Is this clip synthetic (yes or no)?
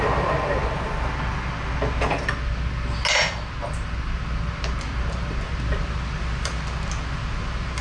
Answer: no